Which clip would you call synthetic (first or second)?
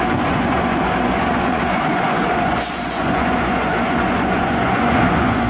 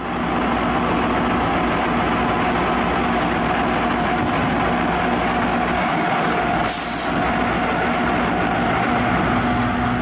first